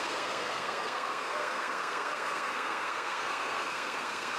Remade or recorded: remade